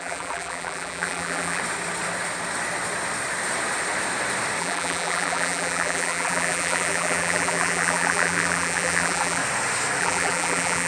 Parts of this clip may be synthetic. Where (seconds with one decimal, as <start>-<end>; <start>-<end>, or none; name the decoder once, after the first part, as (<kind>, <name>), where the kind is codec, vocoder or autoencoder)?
0.0-1.6 (vocoder, BigVGAN v2); 4.6-9.4; 10.0-10.9